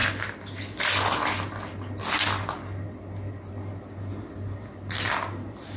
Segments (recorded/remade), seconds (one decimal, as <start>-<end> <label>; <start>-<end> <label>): 0.0-5.8 recorded